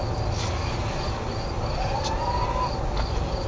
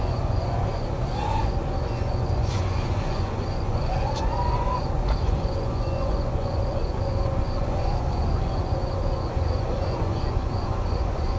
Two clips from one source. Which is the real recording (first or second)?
first